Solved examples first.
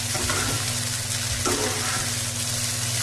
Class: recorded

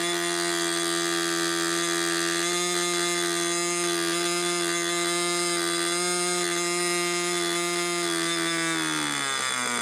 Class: recorded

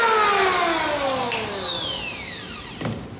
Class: recorded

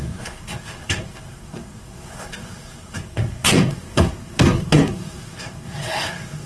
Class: remade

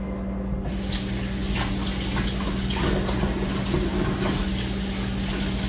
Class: recorded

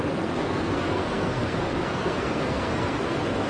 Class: remade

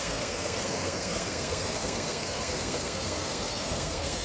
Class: remade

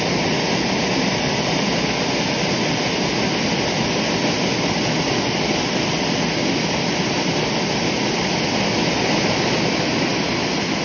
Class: recorded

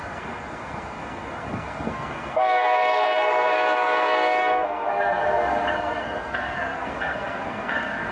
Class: remade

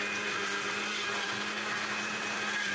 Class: recorded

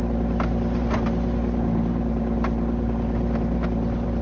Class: recorded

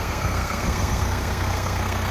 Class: remade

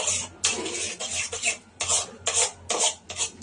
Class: recorded